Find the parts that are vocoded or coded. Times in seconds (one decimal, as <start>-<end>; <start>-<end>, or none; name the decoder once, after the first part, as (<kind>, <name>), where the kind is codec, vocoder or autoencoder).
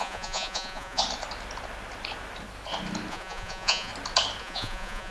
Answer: 0.0-1.0 (vocoder, Vocos); 3.1-3.9; 4.4-5.1